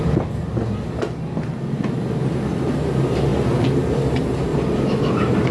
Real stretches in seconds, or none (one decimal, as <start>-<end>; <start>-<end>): 0.0-4.5; 5.1-5.5